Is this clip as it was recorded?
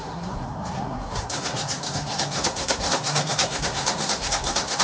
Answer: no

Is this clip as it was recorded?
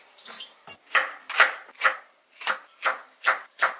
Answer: yes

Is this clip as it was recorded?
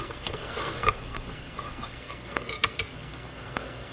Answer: no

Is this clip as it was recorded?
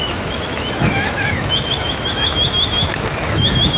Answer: no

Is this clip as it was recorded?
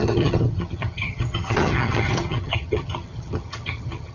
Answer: no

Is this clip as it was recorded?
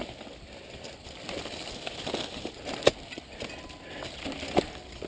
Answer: yes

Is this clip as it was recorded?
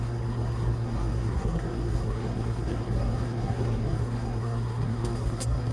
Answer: no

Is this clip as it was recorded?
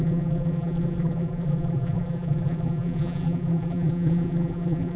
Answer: no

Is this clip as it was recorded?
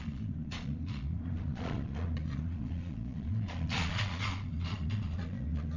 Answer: no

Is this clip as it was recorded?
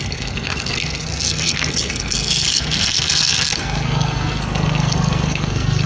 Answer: no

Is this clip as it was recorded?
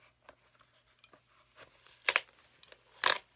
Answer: yes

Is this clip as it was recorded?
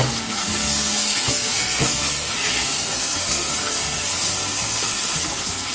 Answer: no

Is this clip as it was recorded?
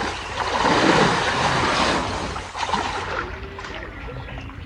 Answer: no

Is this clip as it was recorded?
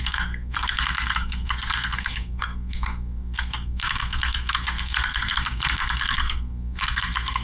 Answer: no